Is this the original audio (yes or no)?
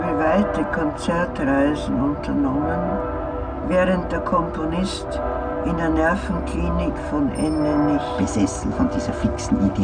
yes